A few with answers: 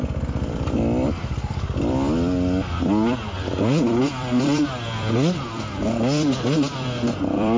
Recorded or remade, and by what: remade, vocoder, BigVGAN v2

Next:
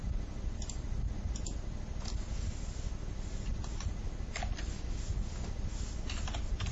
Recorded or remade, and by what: recorded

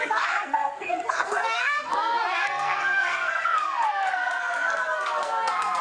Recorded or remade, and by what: remade, codec, SNAC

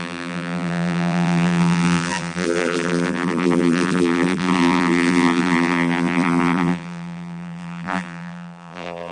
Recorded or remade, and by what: remade, vocoder, BigVGAN v2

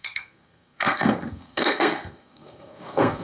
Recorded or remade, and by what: remade, codec, SNAC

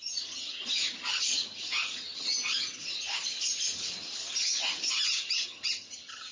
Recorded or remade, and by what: remade, vocoder, HiFi-GAN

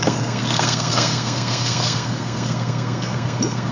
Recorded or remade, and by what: remade, codec, SNAC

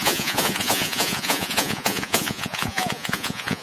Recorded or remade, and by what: remade, vocoder, Vocos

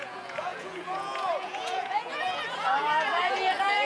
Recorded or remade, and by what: remade, vocoder, Vocos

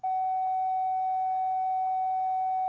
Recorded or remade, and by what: remade, autoencoder, DAC-VAE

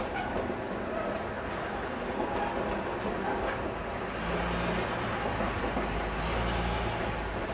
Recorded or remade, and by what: recorded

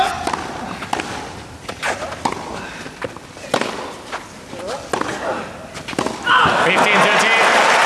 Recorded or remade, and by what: recorded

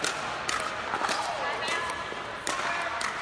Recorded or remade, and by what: recorded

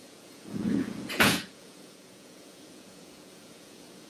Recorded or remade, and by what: remade, vocoder, Vocos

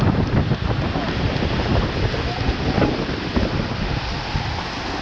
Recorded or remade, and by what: recorded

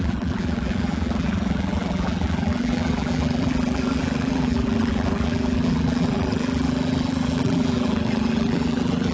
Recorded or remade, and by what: remade, vocoder, BigVGAN v2